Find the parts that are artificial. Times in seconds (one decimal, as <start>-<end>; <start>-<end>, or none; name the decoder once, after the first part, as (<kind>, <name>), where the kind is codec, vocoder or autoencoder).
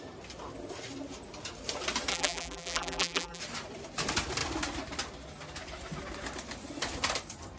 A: 2.1-3.4 (vocoder, BigVGAN v2)